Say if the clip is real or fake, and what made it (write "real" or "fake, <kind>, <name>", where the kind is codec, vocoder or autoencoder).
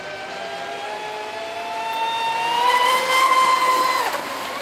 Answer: real